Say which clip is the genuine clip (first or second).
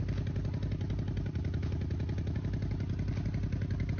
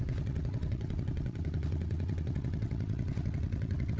first